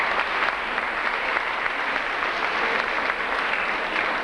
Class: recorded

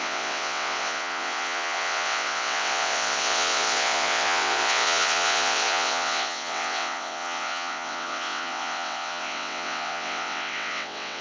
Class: remade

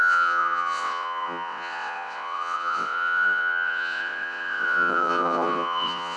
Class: remade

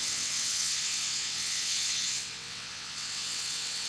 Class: remade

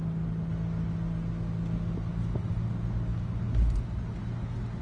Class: recorded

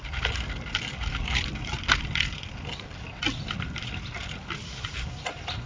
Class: recorded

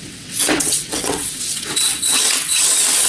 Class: remade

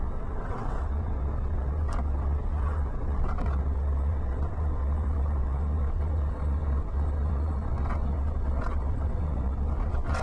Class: remade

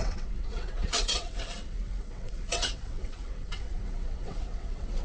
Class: remade